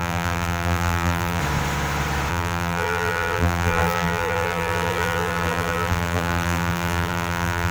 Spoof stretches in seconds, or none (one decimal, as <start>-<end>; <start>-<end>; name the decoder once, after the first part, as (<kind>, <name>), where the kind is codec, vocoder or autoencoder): 0.0-1.4 (vocoder, BigVGAN v2); 2.3-7.7

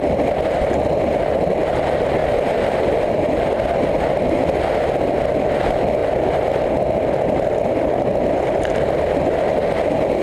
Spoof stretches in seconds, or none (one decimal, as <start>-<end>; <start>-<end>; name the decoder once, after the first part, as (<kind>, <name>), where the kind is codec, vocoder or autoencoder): 2.2-3.2 (vocoder, BigVGAN v2); 6.0-6.5

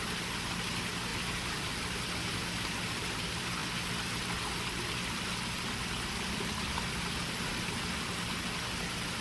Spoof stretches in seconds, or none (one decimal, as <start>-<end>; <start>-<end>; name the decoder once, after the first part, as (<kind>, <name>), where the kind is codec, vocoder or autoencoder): none